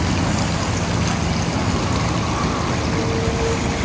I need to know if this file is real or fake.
real